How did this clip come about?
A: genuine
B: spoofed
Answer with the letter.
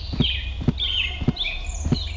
A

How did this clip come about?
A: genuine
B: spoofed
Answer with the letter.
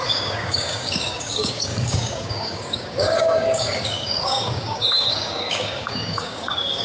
B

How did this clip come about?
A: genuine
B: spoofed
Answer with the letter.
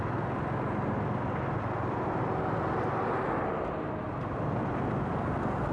A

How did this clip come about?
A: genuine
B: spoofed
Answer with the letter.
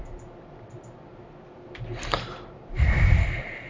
A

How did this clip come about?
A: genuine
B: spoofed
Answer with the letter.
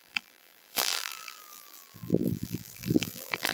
B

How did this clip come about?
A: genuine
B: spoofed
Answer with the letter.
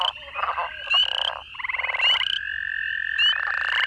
A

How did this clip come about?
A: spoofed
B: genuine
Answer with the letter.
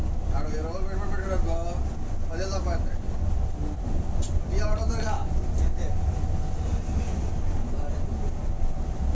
B